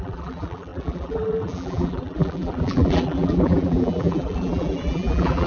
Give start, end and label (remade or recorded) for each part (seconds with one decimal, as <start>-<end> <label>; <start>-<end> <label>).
0.0-5.5 remade